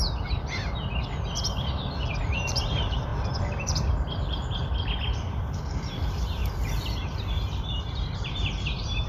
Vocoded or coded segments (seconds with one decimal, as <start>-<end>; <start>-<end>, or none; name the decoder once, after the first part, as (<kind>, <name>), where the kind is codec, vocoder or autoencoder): 2.2-3.1 (vocoder, BigVGAN v2); 5.9-6.4; 7.6-9.1